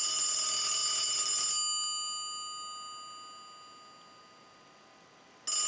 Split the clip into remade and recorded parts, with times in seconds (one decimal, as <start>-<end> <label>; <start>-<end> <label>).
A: 0.0-5.7 recorded